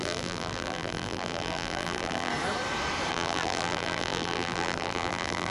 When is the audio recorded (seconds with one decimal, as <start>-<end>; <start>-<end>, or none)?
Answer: 2.3-3.1